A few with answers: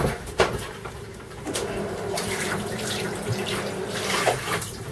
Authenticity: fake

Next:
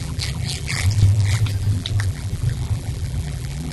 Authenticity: fake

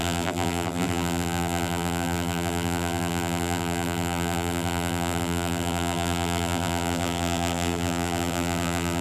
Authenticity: fake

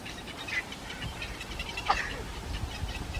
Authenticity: fake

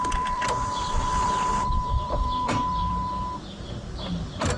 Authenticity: fake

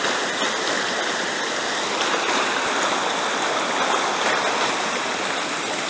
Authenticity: real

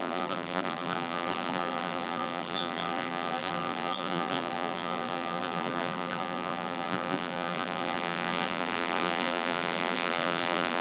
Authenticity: fake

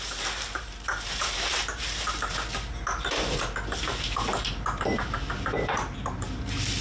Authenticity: fake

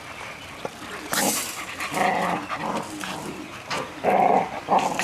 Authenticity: real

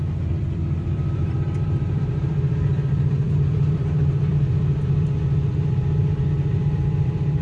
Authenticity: fake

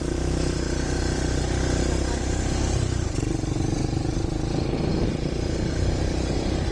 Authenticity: fake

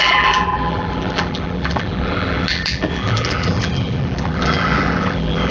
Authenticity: fake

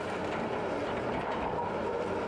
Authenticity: real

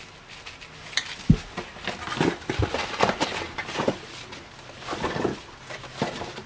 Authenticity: real